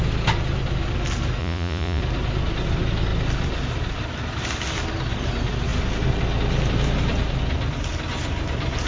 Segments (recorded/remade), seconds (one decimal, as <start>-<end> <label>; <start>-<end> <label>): 0.0-1.4 recorded; 1.4-2.0 remade; 2.0-8.9 recorded